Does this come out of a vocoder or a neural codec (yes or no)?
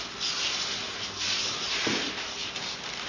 no